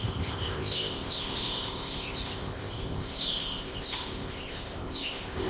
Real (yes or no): no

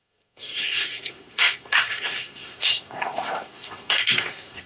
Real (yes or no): no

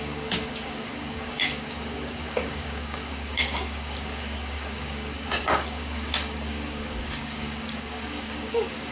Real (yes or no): no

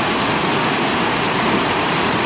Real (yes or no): no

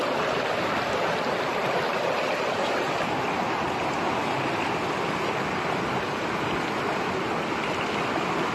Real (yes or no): yes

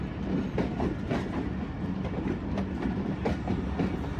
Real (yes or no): yes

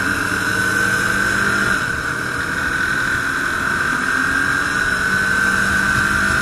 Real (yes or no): yes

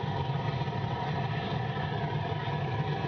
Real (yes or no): yes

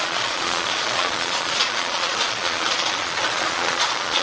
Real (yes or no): no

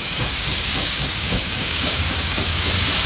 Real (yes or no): no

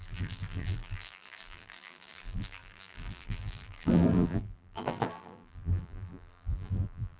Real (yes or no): no